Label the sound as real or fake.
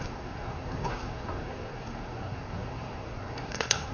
fake